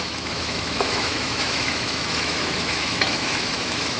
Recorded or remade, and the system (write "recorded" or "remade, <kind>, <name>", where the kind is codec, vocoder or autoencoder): remade, autoencoder, DAC-VAE